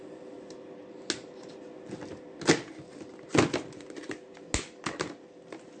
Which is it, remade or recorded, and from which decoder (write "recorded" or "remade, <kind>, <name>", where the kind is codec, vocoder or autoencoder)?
recorded